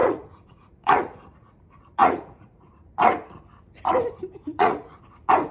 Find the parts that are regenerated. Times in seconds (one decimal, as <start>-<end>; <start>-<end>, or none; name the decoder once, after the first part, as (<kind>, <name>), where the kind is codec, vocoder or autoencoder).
0.0-1.6 (vocoder, Vocos); 2.0-2.7; 4.5-5.0